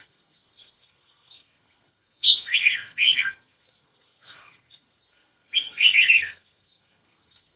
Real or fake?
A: fake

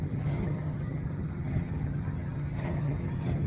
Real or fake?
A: fake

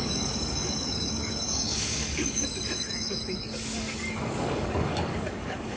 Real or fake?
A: fake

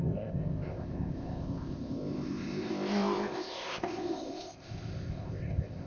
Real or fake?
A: fake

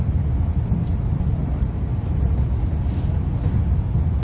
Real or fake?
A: real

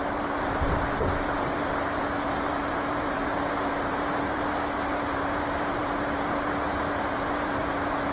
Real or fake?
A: fake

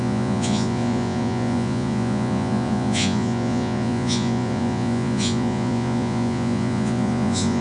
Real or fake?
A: fake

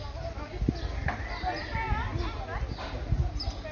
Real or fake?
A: real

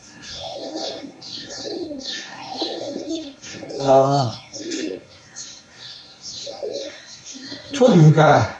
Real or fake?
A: fake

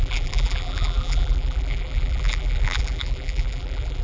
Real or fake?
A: fake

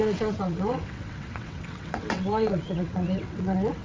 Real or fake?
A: fake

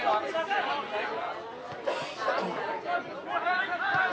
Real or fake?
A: real